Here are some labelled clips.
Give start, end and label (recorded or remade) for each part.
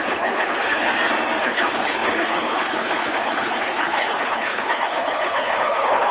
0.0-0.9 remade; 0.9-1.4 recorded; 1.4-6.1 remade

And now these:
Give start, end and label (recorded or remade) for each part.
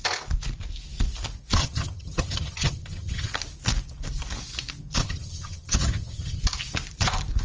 0.0-1.6 recorded; 1.6-3.3 remade; 3.3-5.0 recorded; 5.0-6.4 remade; 6.4-7.4 recorded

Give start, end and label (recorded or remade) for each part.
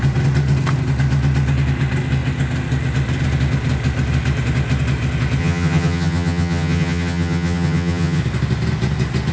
0.0-5.4 recorded; 5.4-8.2 remade; 8.2-9.3 recorded